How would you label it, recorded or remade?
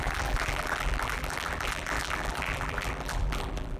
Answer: remade